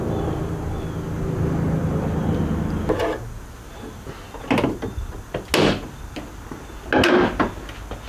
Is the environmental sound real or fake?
real